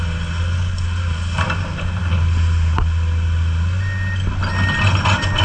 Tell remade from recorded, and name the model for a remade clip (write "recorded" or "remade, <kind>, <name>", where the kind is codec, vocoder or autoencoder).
recorded